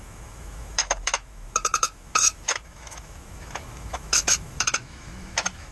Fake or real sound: fake